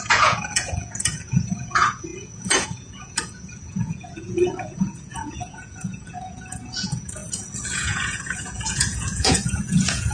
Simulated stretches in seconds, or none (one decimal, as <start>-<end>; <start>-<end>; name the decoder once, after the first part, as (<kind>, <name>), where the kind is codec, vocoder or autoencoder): 0.0-10.1 (vocoder, Vocos)